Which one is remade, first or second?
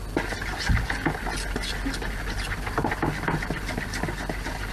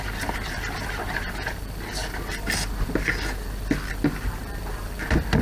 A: second